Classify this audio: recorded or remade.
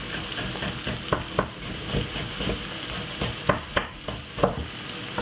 recorded